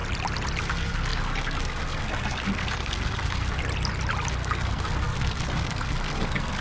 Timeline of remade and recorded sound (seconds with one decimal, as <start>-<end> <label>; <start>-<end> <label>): 0.0-0.6 recorded; 0.6-3.6 remade; 3.6-4.3 recorded; 4.3-6.6 remade